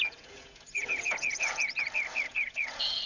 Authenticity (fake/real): fake